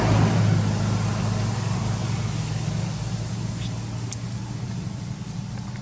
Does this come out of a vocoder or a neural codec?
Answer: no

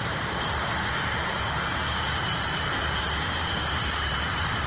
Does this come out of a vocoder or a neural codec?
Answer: yes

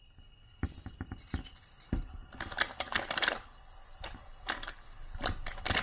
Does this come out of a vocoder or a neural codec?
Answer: no